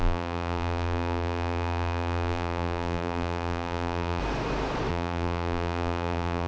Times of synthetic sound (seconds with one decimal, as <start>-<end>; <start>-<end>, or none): 0.0-4.2; 4.9-6.5